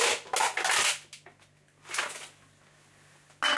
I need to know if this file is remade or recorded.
recorded